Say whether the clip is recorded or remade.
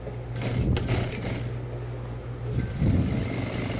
recorded